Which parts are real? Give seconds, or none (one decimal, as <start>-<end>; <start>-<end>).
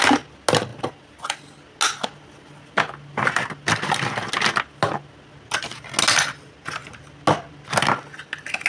0.0-8.7